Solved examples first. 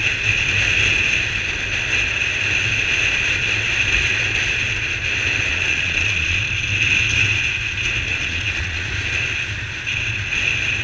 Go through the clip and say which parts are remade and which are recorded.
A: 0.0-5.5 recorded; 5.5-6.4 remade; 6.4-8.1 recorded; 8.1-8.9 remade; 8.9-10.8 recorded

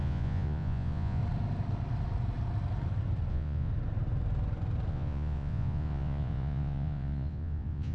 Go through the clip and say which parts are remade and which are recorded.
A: 0.0-1.2 remade; 1.2-3.3 recorded; 3.3-3.7 remade; 3.7-4.9 recorded; 4.9-7.9 remade

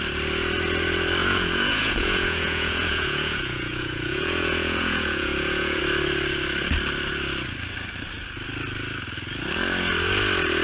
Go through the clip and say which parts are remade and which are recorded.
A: 0.0-1.2 recorded; 1.2-5.8 remade; 5.8-10.6 recorded

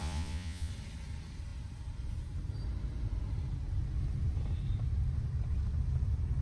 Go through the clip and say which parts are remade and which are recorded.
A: 0.0-0.7 remade; 0.7-6.4 recorded